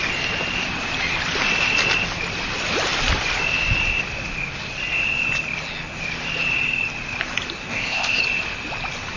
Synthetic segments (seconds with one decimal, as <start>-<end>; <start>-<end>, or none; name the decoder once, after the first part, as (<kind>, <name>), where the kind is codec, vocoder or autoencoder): 7.7-8.2 (codec, ZipCodec)